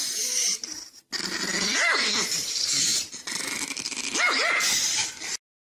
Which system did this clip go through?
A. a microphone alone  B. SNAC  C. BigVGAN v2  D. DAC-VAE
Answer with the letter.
A